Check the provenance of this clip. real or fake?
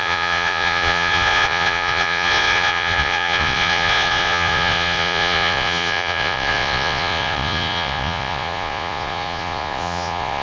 fake